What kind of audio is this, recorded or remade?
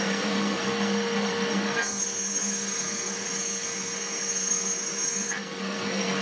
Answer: remade